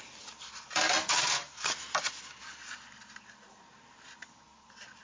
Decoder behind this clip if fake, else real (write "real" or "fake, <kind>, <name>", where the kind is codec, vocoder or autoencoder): real